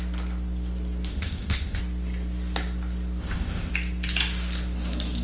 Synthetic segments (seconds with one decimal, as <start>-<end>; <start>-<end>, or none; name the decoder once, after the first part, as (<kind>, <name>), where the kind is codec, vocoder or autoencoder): 1.1-1.8 (codec, ZipCodec); 3.2-3.7